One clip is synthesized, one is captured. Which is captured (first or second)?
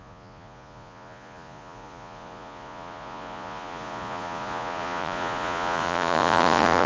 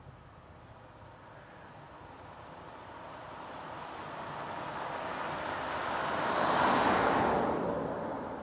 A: second